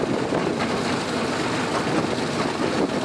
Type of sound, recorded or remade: recorded